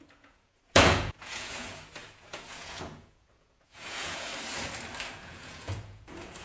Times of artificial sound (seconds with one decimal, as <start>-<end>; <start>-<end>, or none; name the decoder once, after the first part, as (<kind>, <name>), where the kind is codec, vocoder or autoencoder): 0.0-4.3 (vocoder, Vocos); 5.1-6.4